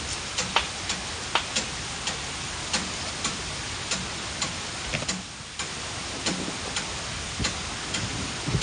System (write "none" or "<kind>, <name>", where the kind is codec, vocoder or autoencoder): none